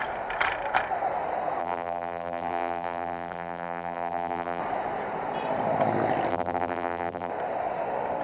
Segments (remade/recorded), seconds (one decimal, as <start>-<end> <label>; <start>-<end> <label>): 0.0-1.6 recorded; 1.6-4.6 remade; 4.6-6.3 recorded; 6.3-7.3 remade; 7.3-8.2 recorded